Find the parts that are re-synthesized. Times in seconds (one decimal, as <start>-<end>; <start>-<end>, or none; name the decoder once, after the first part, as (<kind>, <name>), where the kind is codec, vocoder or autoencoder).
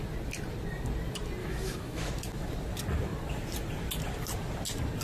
1.4-2.1 (autoencoder, DAC-VAE)